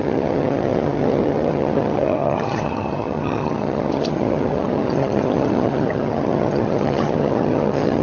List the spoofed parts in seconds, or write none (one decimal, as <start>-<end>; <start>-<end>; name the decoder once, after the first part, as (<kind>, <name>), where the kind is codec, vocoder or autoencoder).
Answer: 0.0-8.0 (vocoder, HiFi-GAN)